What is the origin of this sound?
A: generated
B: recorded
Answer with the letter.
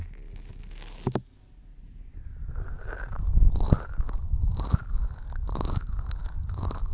B